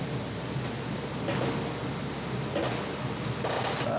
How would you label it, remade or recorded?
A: recorded